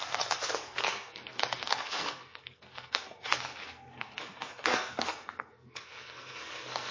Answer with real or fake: fake